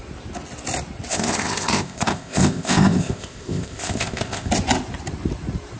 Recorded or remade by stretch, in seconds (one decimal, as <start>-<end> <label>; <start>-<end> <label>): 0.0-1.1 recorded; 1.1-4.5 remade; 4.5-5.8 recorded